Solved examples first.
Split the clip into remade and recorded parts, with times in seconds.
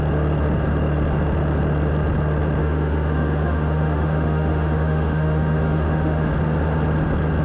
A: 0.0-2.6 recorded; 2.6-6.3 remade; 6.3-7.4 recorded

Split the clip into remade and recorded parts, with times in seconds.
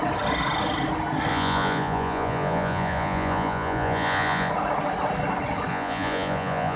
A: 0.0-1.3 recorded; 1.3-4.5 remade; 4.5-5.7 recorded; 5.7-6.8 remade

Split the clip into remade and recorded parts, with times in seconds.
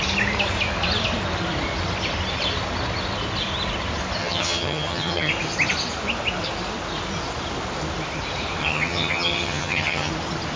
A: 0.0-4.2 recorded; 4.2-5.3 remade; 5.3-8.6 recorded; 8.6-10.1 remade; 10.1-10.6 recorded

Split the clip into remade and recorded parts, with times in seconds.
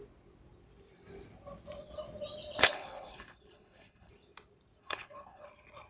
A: 0.0-2.6 recorded; 2.6-4.1 remade; 4.1-4.8 recorded; 4.8-5.5 remade; 5.5-5.9 recorded